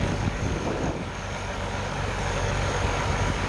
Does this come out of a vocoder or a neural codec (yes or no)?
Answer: yes